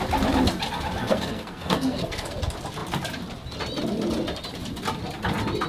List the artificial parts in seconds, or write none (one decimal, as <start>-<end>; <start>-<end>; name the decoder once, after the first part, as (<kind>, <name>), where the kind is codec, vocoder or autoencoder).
1.0-2.4 (codec, SNAC)